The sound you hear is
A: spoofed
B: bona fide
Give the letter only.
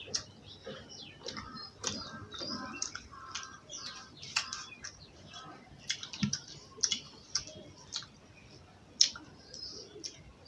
A